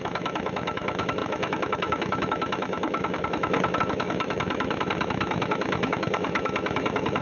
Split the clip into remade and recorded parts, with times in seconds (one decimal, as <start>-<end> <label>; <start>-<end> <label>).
0.0-7.2 remade